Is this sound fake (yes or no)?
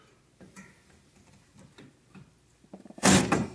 yes